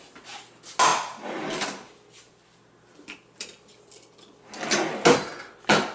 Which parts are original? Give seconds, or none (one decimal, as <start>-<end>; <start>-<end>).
0.0-5.9